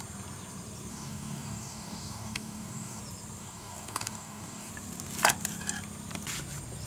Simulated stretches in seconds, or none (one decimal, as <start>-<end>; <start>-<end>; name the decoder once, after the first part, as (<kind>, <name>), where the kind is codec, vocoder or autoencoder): 0.9-3.0 (codec, DAC); 3.4-4.7